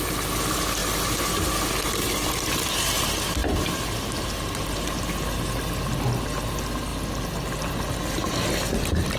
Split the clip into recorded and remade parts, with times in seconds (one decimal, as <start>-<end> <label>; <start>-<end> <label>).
0.0-9.2 recorded